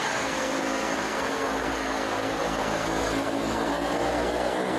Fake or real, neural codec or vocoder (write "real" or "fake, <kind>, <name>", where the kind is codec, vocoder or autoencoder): fake, codec, SNAC